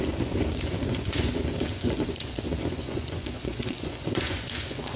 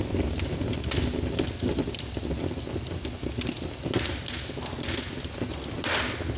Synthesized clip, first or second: first